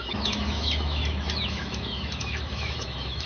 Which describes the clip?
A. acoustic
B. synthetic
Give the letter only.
B